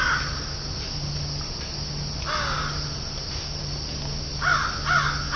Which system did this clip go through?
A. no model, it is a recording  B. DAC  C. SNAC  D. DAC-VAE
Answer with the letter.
A